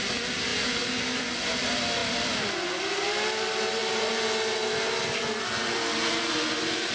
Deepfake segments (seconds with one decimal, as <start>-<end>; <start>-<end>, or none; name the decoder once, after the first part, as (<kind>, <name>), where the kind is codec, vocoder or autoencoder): none